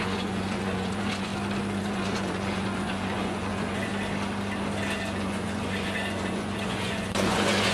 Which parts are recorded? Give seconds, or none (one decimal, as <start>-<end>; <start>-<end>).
1.3-1.8; 3.9-5.0